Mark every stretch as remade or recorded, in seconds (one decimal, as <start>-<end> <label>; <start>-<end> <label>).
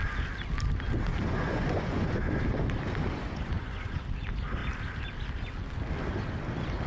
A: 0.0-1.1 recorded; 1.1-2.4 remade; 2.4-3.2 recorded; 3.2-4.0 remade; 4.0-6.9 recorded